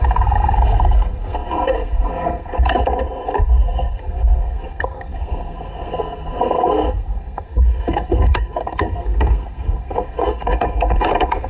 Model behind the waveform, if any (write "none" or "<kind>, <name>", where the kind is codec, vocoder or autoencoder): codec, SNAC